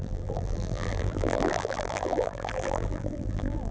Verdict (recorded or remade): remade